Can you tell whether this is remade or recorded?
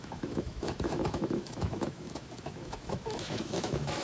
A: remade